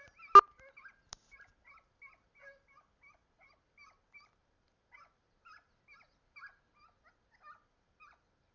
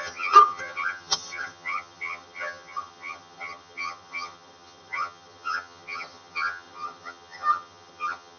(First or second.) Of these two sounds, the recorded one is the first